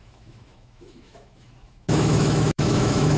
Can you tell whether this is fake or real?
fake